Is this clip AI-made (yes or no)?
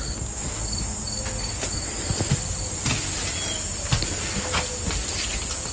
no